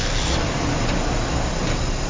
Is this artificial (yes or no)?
no